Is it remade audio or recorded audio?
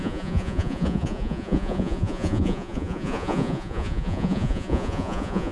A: remade